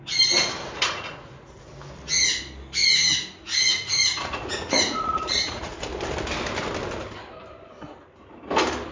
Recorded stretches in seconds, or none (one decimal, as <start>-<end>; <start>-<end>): 0.0-0.6; 1.3-2.8; 5.7-8.9